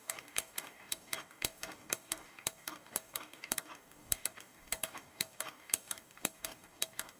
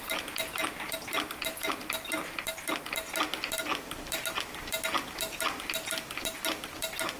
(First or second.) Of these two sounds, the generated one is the first